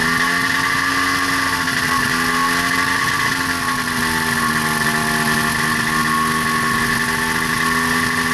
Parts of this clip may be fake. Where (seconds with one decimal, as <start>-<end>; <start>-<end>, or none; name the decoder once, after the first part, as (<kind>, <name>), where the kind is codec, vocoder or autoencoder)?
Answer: none